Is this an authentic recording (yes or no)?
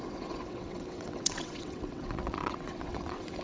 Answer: no